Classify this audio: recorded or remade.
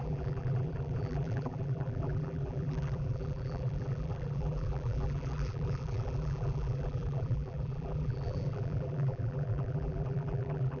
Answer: remade